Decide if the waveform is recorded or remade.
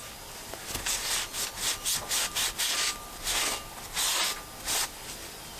recorded